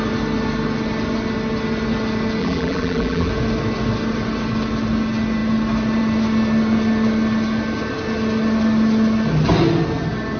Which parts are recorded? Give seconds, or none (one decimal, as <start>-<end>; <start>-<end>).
0.0-2.4; 3.3-10.4